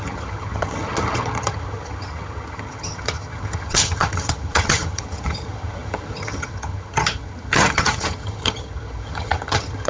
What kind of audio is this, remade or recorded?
remade